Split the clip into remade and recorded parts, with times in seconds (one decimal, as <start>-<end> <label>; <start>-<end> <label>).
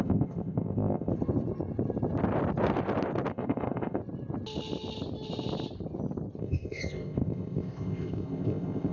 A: 0.0-1.1 remade; 1.1-3.3 recorded; 3.3-4.0 remade; 4.0-6.4 recorded; 6.4-8.9 remade